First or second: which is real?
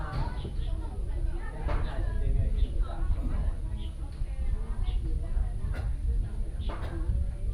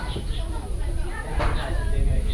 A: first